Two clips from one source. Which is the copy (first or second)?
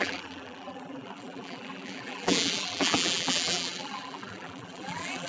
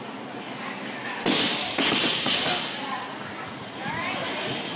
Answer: first